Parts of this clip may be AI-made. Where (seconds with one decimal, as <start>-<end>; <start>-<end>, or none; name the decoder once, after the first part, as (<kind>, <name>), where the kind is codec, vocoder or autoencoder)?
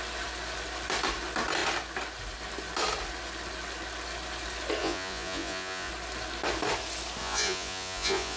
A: 4.8-5.9 (vocoder, Vocos); 7.2-8.4